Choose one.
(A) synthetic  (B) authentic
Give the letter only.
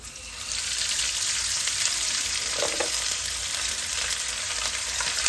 A